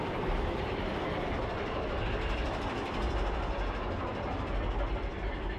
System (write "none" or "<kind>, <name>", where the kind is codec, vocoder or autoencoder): none